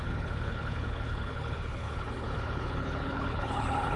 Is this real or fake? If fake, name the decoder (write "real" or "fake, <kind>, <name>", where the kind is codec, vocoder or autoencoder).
fake, codec, HILCodec